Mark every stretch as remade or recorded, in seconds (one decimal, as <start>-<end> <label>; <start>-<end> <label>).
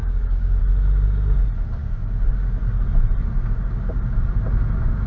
0.0-0.6 remade; 0.6-1.8 recorded; 1.8-2.6 remade; 2.6-5.1 recorded